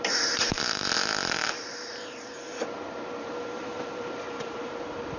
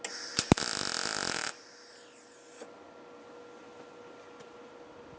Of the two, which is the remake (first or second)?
first